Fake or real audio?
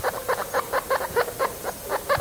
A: real